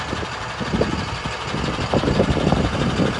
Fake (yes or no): no